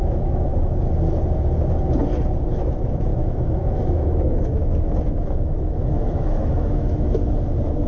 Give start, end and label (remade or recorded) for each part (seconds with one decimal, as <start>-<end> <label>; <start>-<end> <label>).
0.0-0.5 remade; 0.5-2.5 recorded; 2.5-7.2 remade; 7.2-7.9 recorded